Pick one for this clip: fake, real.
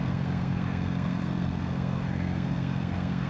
fake